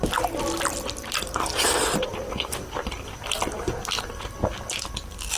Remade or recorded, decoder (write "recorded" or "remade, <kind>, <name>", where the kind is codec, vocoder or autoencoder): recorded